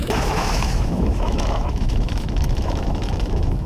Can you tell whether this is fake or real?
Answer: fake